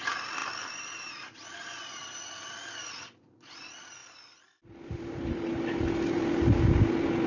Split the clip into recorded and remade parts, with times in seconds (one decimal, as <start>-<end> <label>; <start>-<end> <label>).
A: 0.0-7.3 recorded